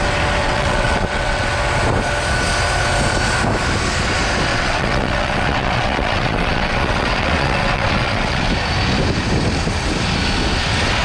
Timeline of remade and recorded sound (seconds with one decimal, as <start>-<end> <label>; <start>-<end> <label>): 0.0-0.4 recorded; 0.4-1.5 remade; 1.5-4.5 recorded; 4.5-8.5 remade; 8.5-11.0 recorded